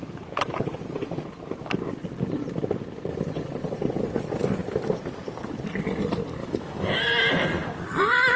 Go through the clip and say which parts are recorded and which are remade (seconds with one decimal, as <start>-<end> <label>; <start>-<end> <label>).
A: 0.0-6.4 recorded; 6.4-7.0 remade; 7.0-8.4 recorded

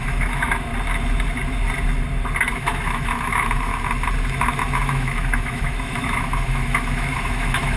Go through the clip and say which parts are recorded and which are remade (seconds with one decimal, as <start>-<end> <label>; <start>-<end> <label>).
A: 0.0-0.7 remade; 0.7-2.5 recorded; 2.5-3.7 remade; 3.7-4.4 recorded; 4.4-7.8 remade

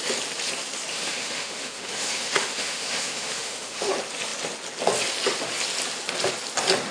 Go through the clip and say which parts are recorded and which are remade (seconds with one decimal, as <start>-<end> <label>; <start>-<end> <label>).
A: 0.0-0.9 recorded; 0.9-3.9 remade; 3.9-6.9 recorded

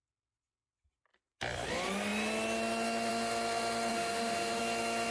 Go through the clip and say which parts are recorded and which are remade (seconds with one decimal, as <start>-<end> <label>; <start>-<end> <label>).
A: 0.0-3.9 recorded; 3.9-4.6 remade; 4.6-5.1 recorded